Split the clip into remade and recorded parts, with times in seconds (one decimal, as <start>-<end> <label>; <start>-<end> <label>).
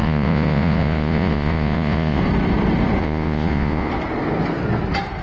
0.0-2.2 remade; 2.2-3.0 recorded; 3.0-3.9 remade; 3.9-5.2 recorded